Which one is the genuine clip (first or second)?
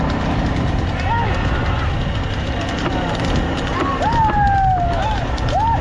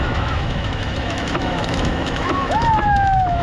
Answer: first